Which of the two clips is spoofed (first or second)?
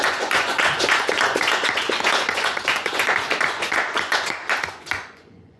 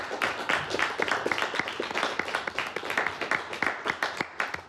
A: first